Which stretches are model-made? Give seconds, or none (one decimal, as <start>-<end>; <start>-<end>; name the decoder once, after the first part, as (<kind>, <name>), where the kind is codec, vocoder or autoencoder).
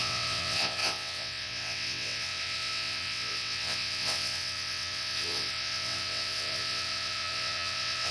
0.0-8.1 (vocoder, WaveNeXt)